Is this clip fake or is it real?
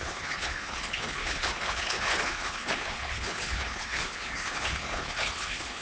fake